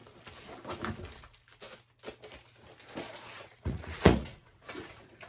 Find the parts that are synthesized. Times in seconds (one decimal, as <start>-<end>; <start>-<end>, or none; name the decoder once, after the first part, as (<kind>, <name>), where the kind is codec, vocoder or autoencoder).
3.1-5.3 (vocoder, Vocos)